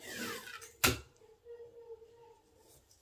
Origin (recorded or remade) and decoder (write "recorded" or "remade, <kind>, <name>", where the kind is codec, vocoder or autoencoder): recorded